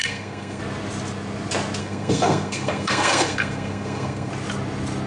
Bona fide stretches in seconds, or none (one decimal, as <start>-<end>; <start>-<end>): 0.6-1.8; 4.3-5.1